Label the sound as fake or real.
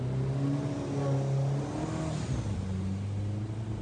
real